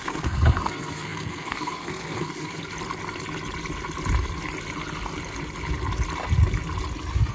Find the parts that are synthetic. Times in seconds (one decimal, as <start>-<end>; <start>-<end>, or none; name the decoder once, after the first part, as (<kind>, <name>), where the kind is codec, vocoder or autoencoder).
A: 0.0-2.6 (codec, SNAC)